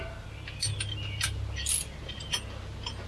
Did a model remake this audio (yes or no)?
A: no